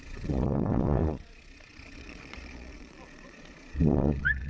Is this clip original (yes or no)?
no